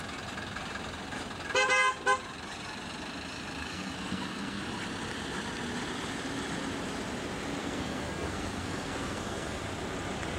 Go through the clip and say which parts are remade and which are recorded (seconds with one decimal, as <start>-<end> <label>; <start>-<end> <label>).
0.0-3.6 recorded; 3.6-4.6 remade; 4.6-7.6 recorded; 7.6-9.6 remade; 9.6-10.4 recorded